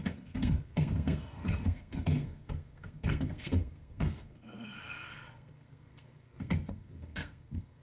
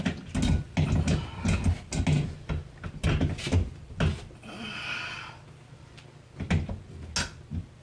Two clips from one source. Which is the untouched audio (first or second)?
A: second